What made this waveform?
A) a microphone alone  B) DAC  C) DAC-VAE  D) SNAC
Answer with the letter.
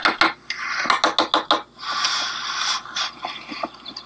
A